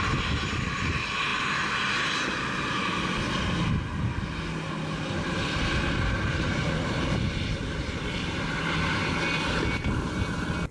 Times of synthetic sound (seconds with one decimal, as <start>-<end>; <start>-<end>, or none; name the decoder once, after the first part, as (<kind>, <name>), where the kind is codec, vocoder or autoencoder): none